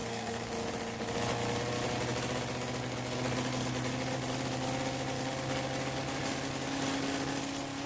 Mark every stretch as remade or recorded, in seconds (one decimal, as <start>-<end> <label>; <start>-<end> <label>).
0.0-0.5 remade; 0.5-7.9 recorded